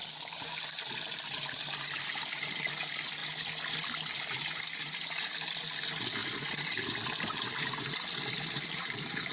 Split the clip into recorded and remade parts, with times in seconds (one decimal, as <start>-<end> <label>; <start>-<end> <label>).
0.0-9.3 recorded